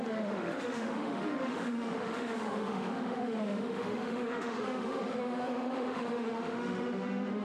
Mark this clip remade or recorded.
remade